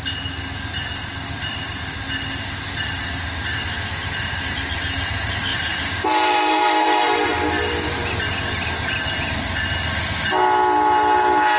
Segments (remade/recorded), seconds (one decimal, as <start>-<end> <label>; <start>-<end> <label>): 0.0-5.5 recorded; 5.5-7.3 remade; 7.3-11.6 recorded